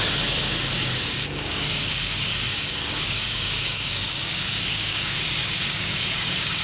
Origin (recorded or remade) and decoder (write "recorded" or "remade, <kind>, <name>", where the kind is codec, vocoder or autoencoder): remade, codec, DAC